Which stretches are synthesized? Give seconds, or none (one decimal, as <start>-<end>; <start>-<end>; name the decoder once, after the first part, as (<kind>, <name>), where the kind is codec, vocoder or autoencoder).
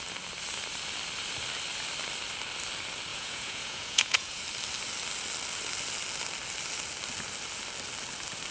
3.1-4.4 (vocoder, Vocos)